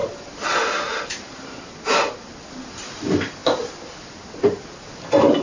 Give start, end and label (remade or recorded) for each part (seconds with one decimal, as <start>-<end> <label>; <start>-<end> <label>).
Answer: 0.0-5.4 recorded